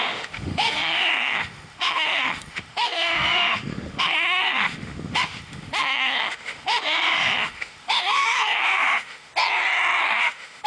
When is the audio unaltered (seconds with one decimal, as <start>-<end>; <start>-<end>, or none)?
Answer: 9.3-10.0